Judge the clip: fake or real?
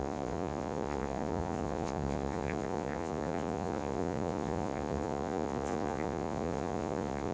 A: fake